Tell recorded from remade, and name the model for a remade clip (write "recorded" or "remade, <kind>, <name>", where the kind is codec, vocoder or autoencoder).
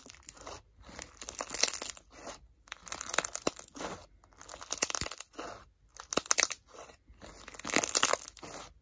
recorded